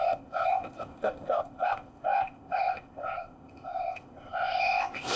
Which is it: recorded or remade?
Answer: remade